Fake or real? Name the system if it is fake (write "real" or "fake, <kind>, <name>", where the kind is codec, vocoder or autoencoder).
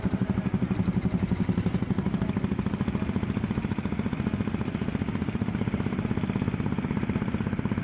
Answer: real